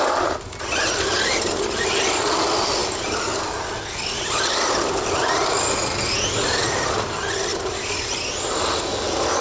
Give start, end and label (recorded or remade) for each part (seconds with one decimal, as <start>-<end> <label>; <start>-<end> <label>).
0.0-9.4 recorded